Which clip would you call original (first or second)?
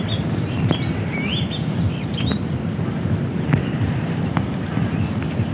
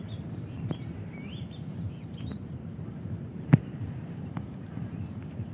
first